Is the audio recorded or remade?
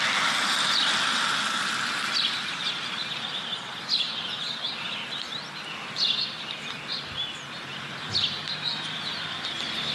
recorded